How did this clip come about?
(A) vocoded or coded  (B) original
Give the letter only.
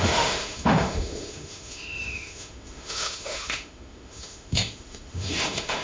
A